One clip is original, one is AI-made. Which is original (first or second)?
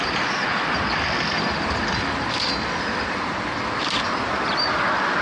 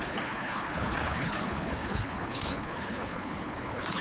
first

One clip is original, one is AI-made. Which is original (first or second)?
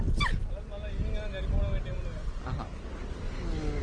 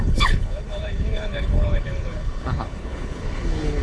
first